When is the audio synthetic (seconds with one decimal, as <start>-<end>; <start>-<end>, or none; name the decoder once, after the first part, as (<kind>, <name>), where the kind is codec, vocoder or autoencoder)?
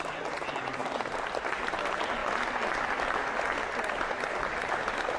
none